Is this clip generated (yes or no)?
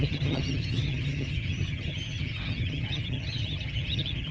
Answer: yes